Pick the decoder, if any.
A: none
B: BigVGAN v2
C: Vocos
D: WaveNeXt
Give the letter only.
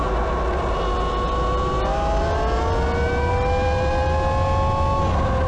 A